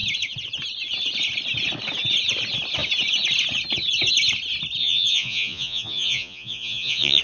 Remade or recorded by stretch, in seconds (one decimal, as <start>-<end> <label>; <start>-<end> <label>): 0.0-4.8 recorded; 4.8-7.2 remade